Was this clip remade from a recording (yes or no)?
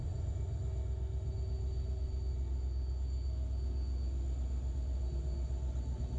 no